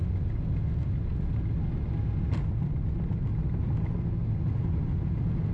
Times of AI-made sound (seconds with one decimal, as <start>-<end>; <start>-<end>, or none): none